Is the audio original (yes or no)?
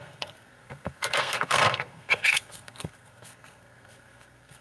no